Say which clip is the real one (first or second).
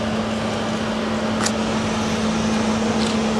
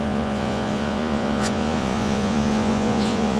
first